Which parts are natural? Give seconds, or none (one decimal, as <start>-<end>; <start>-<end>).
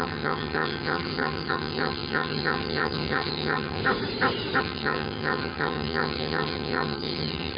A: 3.8-4.6